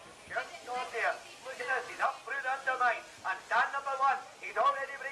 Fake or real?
real